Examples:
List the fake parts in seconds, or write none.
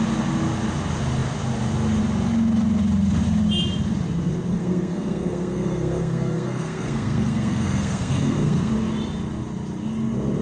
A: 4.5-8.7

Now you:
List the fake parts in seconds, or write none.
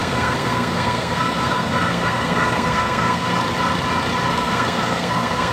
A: 0.0-3.3; 4.3-5.5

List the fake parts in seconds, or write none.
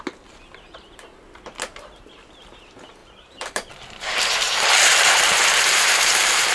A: 3.0-6.5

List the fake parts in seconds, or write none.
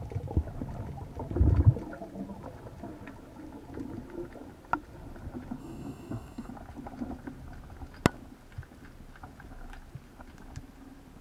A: 5.6-6.5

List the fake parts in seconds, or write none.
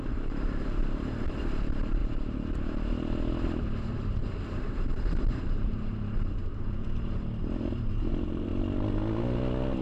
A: 0.0-2.0; 3.8-8.5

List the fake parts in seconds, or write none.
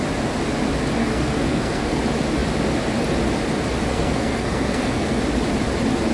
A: 1.0-2.0; 3.9-5.2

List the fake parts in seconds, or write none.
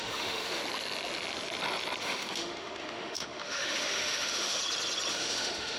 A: 0.0-0.6; 2.0-4.6; 5.1-5.8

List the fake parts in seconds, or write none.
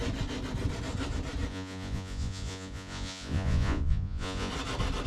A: 1.5-4.5